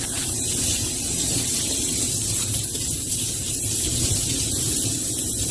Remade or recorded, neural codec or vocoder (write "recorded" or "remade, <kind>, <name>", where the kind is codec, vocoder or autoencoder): remade, vocoder, BigVGAN v2